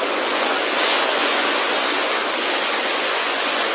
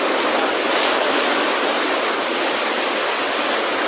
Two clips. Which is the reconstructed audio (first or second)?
first